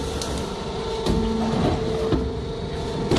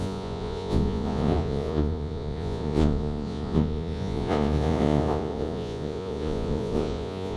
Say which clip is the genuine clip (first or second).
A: first